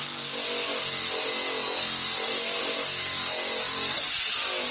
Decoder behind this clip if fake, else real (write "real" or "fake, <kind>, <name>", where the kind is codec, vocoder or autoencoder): real